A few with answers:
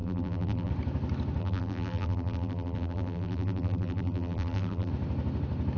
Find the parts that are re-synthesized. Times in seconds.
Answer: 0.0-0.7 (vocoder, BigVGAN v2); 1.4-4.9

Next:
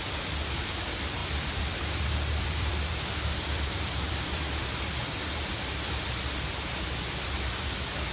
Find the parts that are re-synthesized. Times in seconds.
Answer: 1.2-4.4 (vocoder, BigVGAN v2)

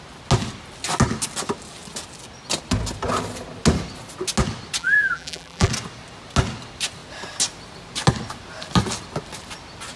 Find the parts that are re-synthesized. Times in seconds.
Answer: 4.8-5.7 (vocoder, BigVGAN v2)

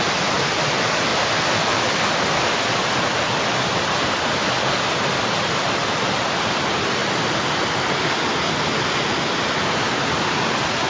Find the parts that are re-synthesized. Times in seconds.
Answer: 1.1-1.8 (vocoder, BigVGAN v2)

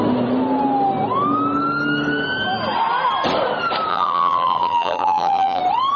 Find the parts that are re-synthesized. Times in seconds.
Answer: 3.9-5.6 (vocoder, BigVGAN v2)